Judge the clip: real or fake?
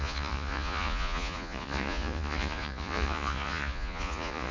fake